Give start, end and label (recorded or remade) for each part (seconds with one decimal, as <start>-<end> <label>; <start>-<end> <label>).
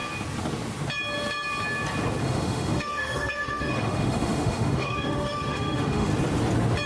0.0-2.2 recorded; 2.2-6.1 remade; 6.1-6.9 recorded